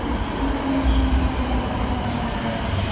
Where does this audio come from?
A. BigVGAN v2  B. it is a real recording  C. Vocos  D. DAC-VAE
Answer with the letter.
B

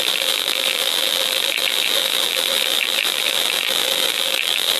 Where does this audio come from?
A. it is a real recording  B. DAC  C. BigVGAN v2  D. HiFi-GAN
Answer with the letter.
C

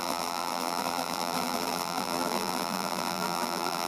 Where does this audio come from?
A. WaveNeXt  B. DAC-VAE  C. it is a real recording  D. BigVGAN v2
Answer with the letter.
D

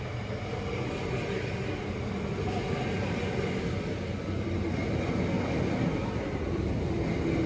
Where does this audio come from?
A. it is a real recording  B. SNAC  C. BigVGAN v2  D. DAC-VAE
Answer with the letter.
A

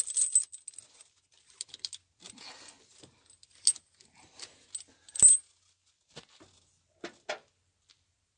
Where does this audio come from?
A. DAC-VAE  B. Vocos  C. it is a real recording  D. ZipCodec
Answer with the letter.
C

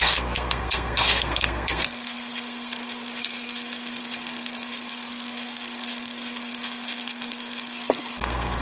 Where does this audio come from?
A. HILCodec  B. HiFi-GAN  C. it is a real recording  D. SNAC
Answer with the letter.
D